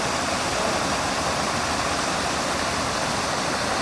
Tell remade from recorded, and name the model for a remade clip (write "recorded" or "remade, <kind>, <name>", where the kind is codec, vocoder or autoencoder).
recorded